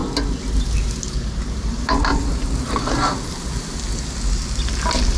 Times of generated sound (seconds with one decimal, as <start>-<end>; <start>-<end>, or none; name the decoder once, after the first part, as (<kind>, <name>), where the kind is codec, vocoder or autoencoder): 0.0-2.7 (vocoder, BigVGAN v2)